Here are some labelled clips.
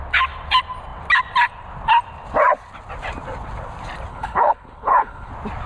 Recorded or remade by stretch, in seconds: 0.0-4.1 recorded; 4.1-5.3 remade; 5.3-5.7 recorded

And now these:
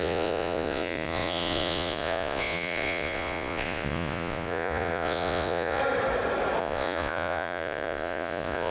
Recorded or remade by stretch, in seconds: 0.0-5.8 remade; 5.8-6.6 recorded; 6.6-8.7 remade